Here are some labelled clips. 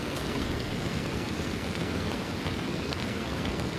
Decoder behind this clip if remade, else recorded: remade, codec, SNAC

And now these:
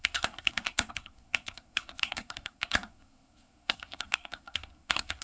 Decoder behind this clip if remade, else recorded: remade, codec, SNAC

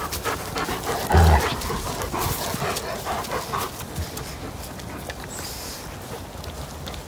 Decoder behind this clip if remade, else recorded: recorded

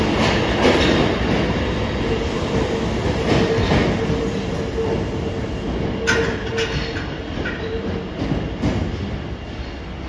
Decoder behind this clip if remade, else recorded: recorded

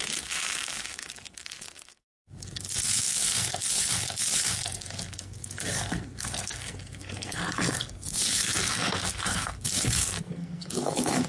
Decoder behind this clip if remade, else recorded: remade, codec, SNAC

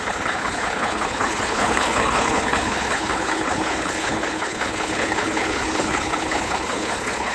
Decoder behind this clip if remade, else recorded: remade, codec, HILCodec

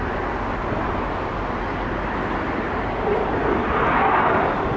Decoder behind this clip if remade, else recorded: recorded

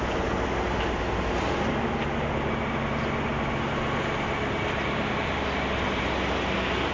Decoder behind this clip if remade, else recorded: recorded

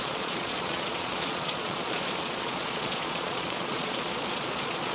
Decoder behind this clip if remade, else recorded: remade, vocoder, Vocos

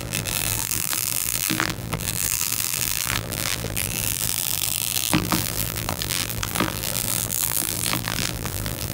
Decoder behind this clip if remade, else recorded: remade, vocoder, BigVGAN v2